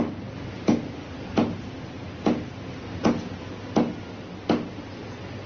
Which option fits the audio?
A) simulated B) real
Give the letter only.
B